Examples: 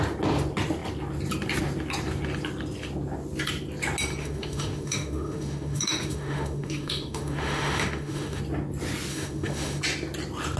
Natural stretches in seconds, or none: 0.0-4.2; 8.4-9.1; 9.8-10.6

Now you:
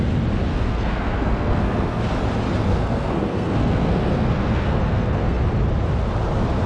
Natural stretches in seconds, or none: 0.0-0.5; 2.0-2.7; 5.4-6.7

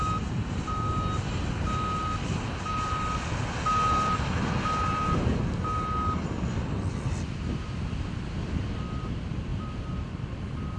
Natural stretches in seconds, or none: 0.0-10.8

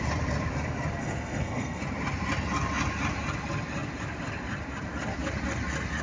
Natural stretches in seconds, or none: 0.0-1.0; 1.8-6.0

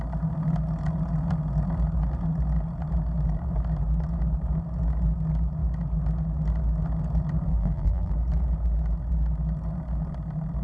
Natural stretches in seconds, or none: 0.0-7.5; 8.1-10.6

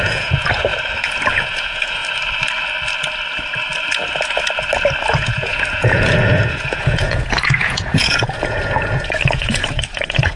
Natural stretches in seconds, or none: 0.7-1.3; 2.0-5.1

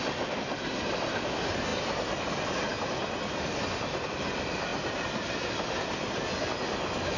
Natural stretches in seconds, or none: 0.0-7.2

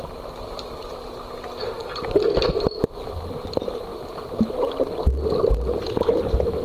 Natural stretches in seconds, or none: 0.0-1.8; 2.5-6.6